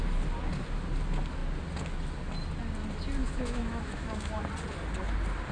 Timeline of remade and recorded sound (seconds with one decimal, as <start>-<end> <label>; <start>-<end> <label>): 0.0-3.2 recorded; 3.2-4.4 remade; 4.4-5.5 recorded